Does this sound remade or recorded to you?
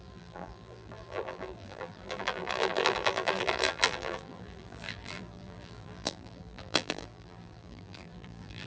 remade